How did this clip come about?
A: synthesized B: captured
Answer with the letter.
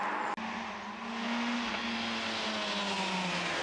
B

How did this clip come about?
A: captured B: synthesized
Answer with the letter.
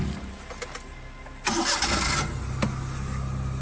A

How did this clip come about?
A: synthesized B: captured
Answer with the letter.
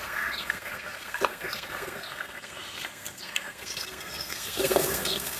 A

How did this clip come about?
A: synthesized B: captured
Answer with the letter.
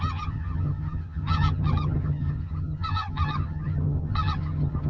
A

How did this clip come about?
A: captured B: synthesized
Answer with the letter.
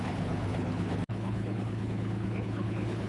B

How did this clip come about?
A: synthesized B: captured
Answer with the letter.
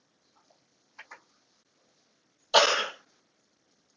B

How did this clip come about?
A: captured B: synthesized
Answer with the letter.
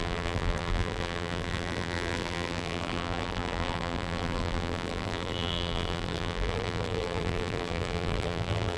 B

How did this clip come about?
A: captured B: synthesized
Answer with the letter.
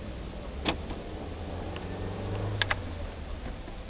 A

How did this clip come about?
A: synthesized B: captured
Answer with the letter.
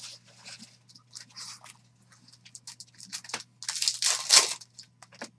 B